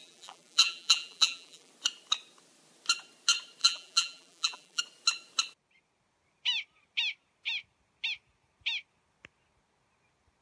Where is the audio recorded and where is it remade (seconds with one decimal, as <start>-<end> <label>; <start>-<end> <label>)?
0.0-1.7 remade; 1.7-3.6 recorded; 3.6-4.8 remade; 4.8-10.4 recorded

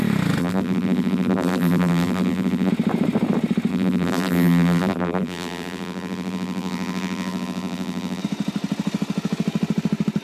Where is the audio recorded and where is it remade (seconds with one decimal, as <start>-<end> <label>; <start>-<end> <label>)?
0.0-0.4 recorded; 0.4-2.7 remade; 2.7-3.7 recorded; 3.7-8.2 remade; 8.2-10.2 recorded